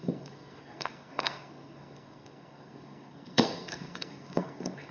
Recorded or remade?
remade